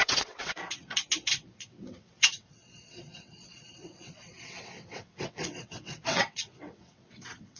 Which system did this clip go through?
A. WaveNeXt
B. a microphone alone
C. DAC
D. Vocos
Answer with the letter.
A